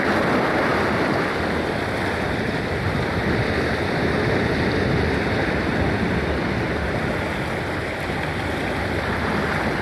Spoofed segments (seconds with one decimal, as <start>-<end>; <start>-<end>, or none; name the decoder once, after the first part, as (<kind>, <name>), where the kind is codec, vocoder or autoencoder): none